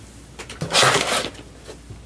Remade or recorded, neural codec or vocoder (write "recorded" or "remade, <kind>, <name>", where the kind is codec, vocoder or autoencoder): recorded